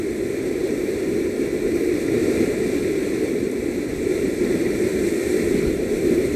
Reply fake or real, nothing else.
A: fake